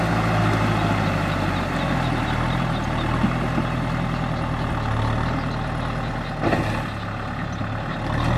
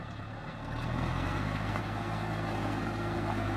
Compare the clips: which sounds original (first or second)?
first